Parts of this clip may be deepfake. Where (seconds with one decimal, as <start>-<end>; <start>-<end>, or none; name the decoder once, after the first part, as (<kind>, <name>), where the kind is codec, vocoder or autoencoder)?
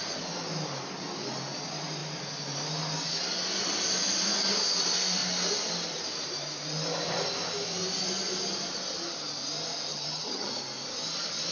9.9-10.5 (vocoder, HiFi-GAN)